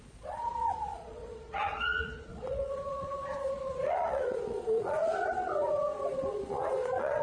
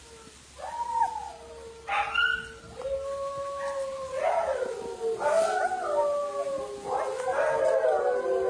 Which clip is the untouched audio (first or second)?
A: second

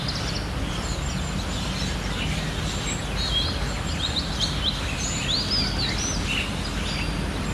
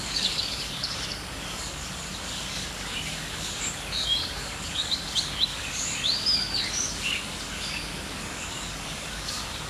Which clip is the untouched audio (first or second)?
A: first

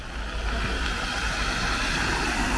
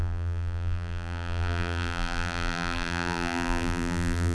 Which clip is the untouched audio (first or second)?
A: first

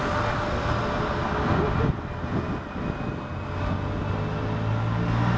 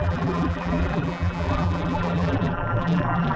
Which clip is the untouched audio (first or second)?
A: first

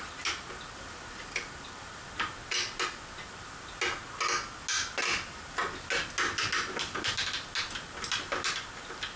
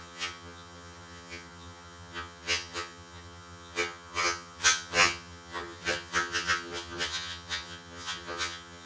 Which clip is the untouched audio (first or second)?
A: first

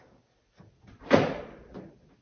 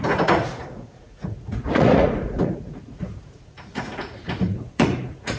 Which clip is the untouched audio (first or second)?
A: first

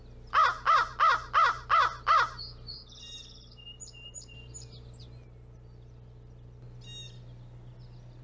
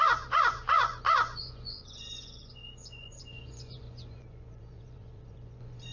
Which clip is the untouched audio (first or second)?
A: first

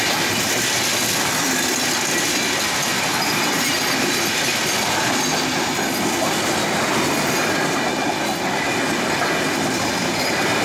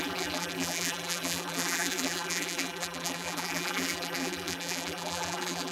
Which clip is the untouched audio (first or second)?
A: first